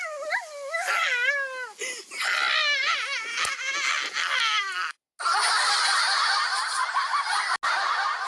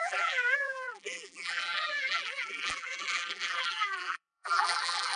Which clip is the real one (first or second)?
first